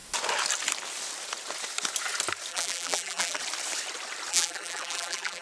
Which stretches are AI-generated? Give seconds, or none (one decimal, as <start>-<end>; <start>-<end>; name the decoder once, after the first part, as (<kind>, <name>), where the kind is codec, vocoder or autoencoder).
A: 2.5-3.4 (vocoder, BigVGAN v2); 4.3-5.4